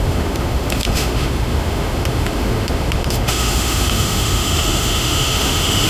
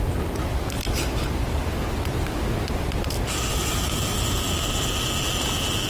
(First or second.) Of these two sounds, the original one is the second